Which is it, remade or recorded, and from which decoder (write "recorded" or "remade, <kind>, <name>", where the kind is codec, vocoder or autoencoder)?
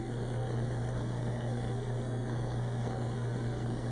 remade, codec, SNAC